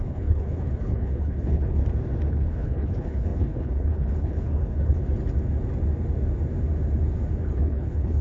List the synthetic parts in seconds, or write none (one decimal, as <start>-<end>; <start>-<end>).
0.0-1.8; 2.3-5.0; 7.4-8.2